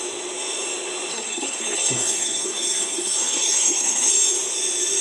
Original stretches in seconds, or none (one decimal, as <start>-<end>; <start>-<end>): 0.0-1.1; 4.1-5.0